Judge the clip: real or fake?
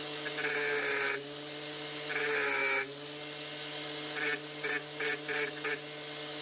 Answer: real